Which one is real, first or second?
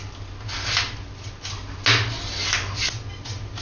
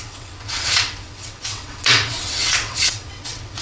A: first